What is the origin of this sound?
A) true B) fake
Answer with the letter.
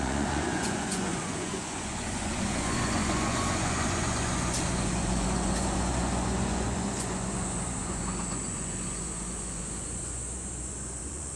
B